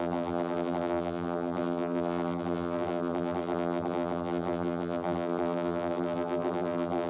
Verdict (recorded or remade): remade